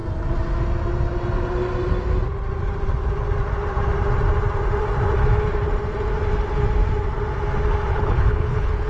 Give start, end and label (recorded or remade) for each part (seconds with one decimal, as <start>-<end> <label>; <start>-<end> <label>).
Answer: 0.0-7.9 recorded; 7.9-8.9 remade